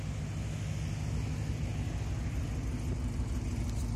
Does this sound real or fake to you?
real